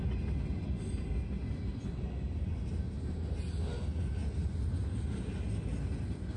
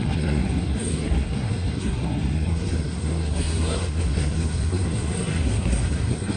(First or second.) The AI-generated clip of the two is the second